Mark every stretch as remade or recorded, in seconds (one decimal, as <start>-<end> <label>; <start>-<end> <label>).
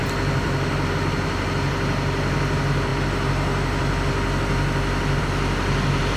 0.0-6.2 recorded